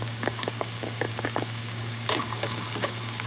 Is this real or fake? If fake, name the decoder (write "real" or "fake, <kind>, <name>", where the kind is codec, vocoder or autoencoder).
fake, codec, DAC